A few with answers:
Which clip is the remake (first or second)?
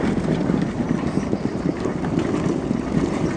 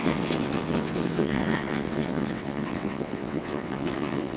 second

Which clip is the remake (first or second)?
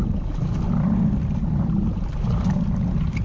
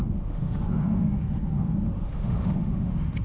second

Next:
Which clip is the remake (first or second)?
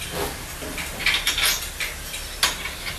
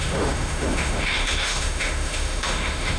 second